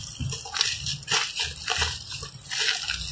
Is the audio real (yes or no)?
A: yes